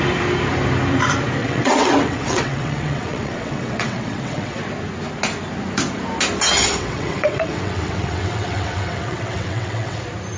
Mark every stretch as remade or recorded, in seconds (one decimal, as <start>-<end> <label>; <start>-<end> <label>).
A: 0.0-1.4 recorded; 1.4-4.6 remade; 4.6-6.6 recorded; 6.6-10.0 remade; 10.0-10.4 recorded